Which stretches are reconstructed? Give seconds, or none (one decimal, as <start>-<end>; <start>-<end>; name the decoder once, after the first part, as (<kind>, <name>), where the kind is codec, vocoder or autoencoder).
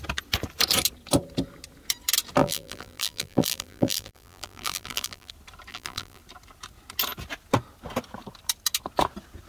2.4-5.3 (vocoder, BigVGAN v2); 5.7-6.2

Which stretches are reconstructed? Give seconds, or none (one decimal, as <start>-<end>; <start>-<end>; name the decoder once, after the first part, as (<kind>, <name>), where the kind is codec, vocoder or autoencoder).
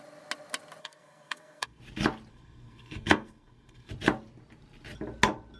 0.8-1.8 (codec, SNAC); 2.3-3.9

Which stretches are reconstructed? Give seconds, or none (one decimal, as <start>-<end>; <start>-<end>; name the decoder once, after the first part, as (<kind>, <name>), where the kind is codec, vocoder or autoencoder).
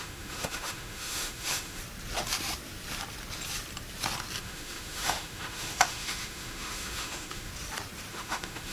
0.0-1.8 (autoencoder, DAC-VAE); 4.4-7.5; 8.1-8.7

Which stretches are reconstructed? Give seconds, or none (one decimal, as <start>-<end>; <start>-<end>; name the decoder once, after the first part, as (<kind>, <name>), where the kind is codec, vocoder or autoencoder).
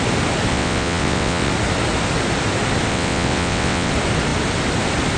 0.5-1.5 (vocoder, WaveNeXt); 2.9-3.9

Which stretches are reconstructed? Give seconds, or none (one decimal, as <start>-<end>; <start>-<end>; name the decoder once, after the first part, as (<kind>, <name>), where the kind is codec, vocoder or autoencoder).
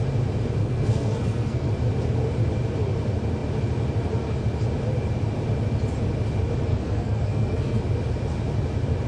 0.6-1.7 (codec, SNAC); 6.7-7.8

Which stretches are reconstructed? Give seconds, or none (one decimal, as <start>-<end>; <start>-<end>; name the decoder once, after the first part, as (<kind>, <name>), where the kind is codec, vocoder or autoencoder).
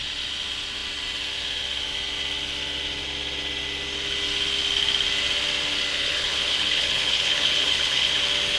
5.9-8.2 (codec, HILCodec)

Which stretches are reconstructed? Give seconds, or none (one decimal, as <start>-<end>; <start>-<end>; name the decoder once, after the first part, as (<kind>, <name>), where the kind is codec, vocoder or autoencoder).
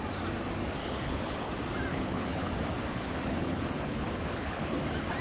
0.8-1.5 (codec, HILCodec); 1.9-2.5; 2.9-4.8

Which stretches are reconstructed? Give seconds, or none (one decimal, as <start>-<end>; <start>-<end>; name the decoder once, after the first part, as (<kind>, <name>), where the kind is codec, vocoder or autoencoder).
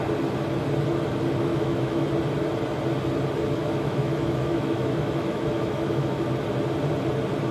1.5-2.1 (autoencoder, DAC-VAE); 3.6-6.2